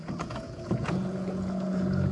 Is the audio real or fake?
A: fake